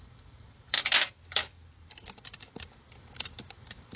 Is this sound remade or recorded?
remade